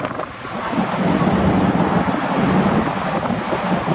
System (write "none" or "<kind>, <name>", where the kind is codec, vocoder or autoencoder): none